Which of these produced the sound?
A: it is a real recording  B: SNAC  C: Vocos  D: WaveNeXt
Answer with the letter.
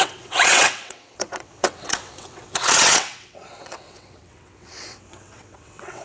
D